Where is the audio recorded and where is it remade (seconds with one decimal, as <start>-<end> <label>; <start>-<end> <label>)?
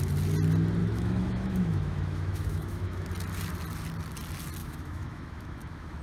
0.0-0.8 recorded; 0.8-3.1 remade; 3.1-4.6 recorded; 4.6-6.0 remade